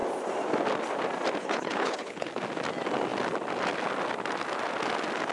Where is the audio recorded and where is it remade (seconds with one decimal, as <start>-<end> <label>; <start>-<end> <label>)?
0.0-1.4 recorded; 1.4-2.3 remade; 2.3-5.3 recorded